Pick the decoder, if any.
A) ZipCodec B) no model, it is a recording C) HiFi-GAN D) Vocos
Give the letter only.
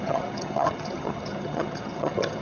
C